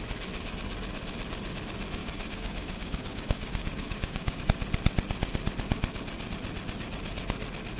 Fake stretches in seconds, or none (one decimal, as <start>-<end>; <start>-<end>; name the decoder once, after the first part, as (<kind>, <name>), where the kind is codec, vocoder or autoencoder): 2.0-4.4 (codec, DAC)